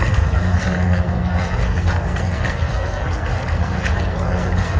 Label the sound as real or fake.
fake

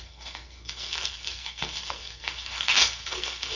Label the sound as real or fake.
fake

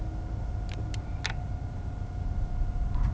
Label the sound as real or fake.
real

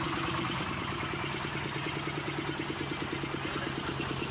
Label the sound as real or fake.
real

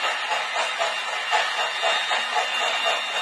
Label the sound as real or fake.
real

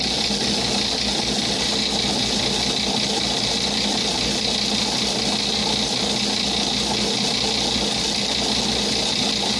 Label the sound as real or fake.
real